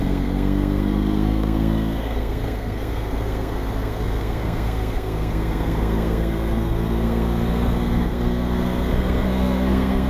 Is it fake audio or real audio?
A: fake